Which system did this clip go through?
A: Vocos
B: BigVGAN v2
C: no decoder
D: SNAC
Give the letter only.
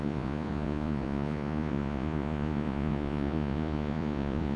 A